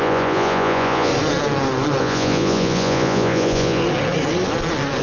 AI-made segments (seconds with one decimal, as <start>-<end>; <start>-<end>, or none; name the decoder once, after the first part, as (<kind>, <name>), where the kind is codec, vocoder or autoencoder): 0.0-1.1 (vocoder, Vocos); 2.0-3.8